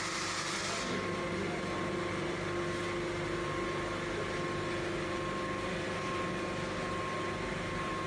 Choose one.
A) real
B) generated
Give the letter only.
A